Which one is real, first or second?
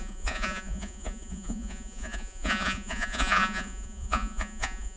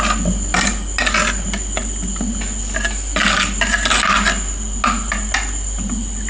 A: second